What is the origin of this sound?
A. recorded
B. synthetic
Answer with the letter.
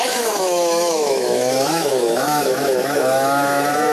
B